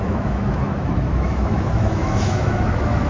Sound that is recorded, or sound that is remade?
remade